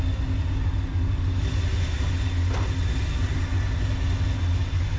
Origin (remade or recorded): recorded